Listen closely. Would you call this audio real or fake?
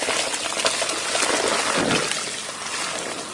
real